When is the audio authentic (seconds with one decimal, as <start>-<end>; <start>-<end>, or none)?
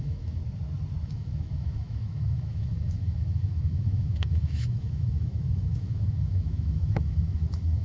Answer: 0.4-1.0